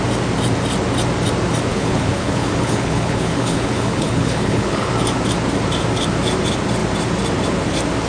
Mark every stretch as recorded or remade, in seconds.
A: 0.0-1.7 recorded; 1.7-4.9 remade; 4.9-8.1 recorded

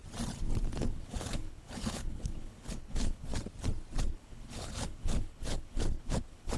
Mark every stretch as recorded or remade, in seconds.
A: 0.0-0.8 recorded; 0.8-3.3 remade; 3.3-4.0 recorded; 4.0-6.6 remade

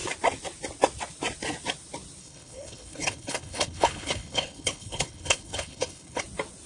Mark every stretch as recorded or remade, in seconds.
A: 0.0-2.2 recorded; 2.2-6.2 remade; 6.2-6.7 recorded

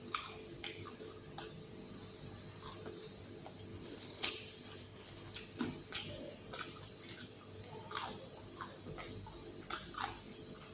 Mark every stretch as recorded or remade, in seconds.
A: 0.0-3.7 recorded; 3.7-4.3 remade; 4.3-4.8 recorded; 4.8-5.4 remade; 5.4-10.7 recorded

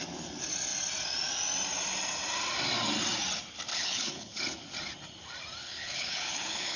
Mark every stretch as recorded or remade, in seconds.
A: 0.0-3.7 recorded; 3.7-4.4 remade; 4.4-5.6 recorded; 5.6-6.8 remade